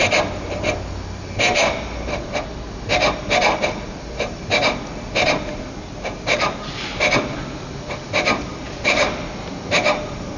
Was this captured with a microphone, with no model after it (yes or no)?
yes